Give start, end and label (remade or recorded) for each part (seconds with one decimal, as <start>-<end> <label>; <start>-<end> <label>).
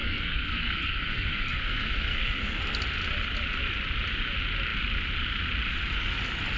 0.0-2.6 remade; 2.6-6.6 recorded